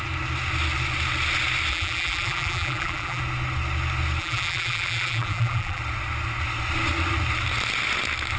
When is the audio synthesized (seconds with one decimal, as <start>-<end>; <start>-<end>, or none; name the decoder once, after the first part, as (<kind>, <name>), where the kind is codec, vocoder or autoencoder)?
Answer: 1.7-3.2 (vocoder, BigVGAN v2); 4.2-5.8